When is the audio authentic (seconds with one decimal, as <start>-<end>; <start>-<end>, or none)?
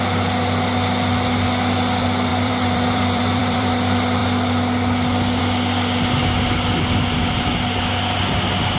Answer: 0.0-2.3; 3.7-8.8